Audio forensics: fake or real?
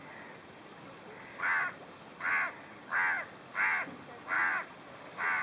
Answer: real